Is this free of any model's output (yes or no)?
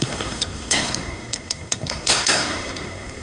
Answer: no